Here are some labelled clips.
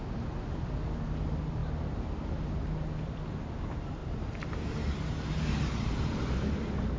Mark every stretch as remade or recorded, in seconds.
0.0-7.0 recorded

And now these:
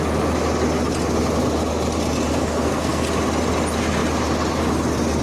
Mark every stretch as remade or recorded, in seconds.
0.0-2.3 recorded; 2.3-3.1 remade; 3.1-5.2 recorded

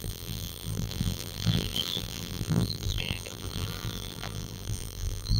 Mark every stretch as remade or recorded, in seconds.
0.0-5.4 remade